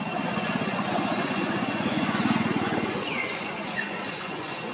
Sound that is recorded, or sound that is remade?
remade